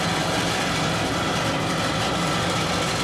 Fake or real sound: real